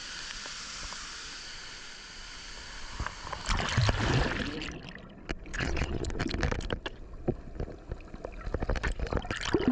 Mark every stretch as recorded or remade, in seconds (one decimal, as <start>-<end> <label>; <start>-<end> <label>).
0.0-5.5 recorded; 5.5-6.2 remade; 6.2-9.7 recorded